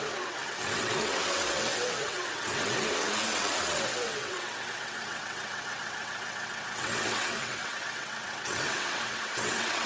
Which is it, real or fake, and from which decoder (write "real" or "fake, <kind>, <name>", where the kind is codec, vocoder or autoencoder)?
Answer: fake, vocoder, WaveNeXt